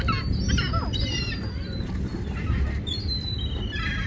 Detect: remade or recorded recorded